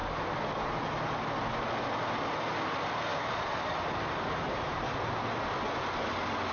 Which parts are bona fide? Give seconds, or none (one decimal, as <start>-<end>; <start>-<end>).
0.0-3.1; 5.2-6.5